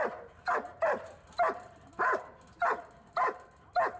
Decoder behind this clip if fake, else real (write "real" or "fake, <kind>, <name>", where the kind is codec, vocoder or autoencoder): real